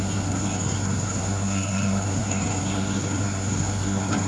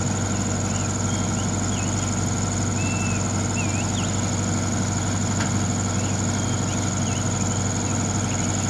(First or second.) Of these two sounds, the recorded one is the second